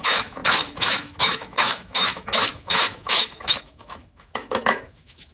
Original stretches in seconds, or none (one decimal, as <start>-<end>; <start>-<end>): none